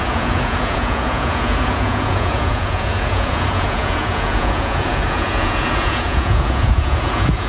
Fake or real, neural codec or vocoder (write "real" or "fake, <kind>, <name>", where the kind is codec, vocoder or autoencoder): fake, vocoder, Vocos